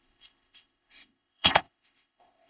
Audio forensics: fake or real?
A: fake